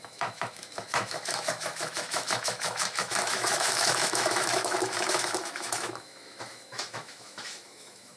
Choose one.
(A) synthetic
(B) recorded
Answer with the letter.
A